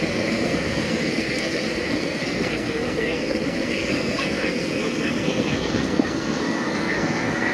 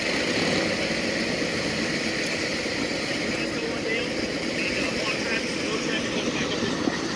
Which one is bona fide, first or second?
second